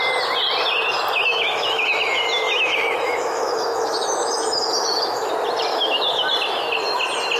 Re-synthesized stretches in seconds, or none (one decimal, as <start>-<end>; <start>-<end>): 1.3-5.3; 5.7-6.2